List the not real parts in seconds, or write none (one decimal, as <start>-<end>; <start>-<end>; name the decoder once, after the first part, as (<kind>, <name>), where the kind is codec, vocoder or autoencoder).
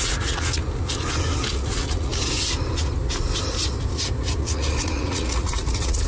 0.0-0.6 (vocoder, Vocos); 1.5-2.1; 4.4-6.1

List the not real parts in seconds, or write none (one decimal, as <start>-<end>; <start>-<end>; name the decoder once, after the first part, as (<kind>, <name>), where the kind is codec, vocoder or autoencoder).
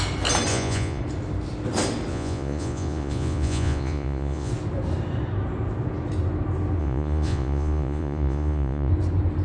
0.5-1.0 (vocoder, Vocos); 2.1-4.5; 6.8-8.9